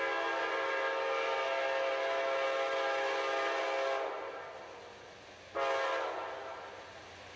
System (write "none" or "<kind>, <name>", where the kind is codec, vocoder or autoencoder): none